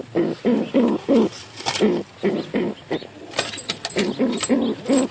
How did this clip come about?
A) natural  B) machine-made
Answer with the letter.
A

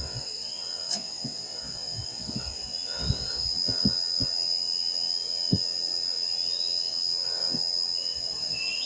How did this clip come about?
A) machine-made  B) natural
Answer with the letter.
A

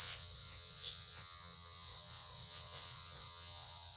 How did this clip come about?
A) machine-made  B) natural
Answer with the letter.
A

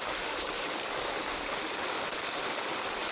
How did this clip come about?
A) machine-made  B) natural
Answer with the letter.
B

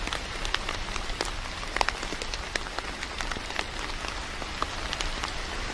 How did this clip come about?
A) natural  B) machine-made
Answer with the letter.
A